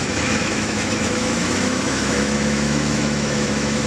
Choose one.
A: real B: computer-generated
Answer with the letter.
B